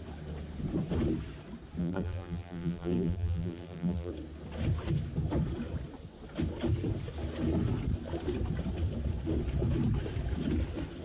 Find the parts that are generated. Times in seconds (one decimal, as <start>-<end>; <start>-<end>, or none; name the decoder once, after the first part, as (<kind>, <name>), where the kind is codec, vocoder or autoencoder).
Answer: 1.8-4.1 (vocoder, BigVGAN v2)